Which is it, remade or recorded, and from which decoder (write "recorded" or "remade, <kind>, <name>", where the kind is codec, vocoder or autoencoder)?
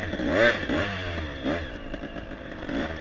remade, vocoder, BigVGAN v2